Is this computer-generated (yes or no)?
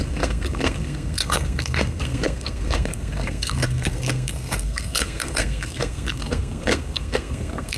yes